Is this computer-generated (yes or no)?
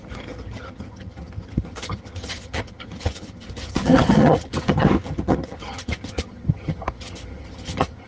yes